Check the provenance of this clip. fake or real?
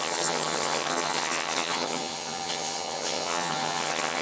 fake